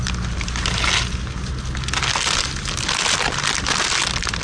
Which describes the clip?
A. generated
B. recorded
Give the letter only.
B